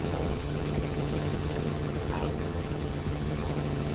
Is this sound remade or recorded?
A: remade